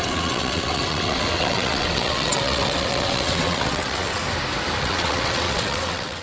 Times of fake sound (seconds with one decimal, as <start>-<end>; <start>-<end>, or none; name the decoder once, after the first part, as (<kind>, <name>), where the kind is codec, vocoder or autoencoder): 0.0-4.2 (vocoder, WaveNeXt); 4.8-6.2